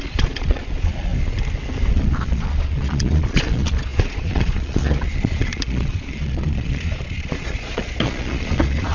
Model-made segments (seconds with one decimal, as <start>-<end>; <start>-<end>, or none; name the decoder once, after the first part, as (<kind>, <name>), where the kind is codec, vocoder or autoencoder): 0.0-1.1 (vocoder, Vocos); 1.9-8.9